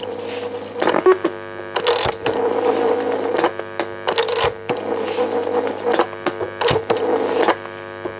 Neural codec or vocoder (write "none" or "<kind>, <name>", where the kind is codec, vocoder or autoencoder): none